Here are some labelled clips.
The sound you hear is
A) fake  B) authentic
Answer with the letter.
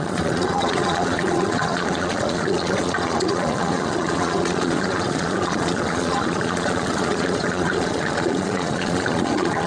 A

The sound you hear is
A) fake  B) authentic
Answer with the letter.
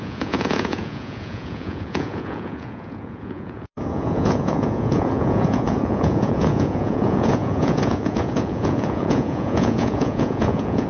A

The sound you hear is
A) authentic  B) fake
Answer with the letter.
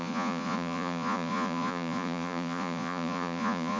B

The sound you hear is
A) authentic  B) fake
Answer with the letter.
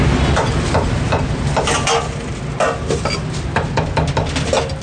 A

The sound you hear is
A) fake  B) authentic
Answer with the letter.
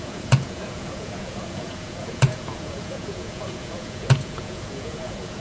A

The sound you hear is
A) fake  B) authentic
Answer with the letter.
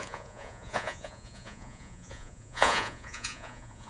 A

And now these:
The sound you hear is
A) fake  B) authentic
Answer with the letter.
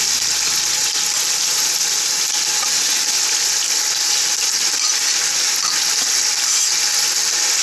B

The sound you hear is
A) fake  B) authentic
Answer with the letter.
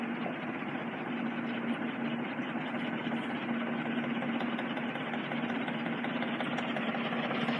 B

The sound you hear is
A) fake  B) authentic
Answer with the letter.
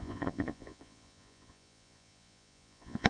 A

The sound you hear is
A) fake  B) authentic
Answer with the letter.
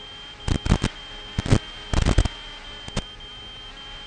B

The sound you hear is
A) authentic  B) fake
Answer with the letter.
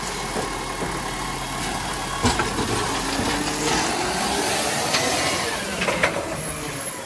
A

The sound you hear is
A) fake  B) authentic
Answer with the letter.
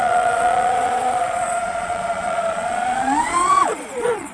A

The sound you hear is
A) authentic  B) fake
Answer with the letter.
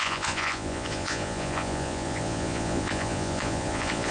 B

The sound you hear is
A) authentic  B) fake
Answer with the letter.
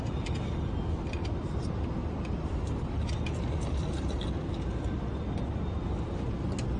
A